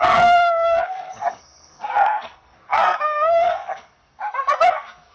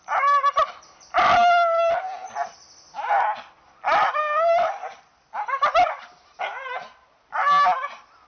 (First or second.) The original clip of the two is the second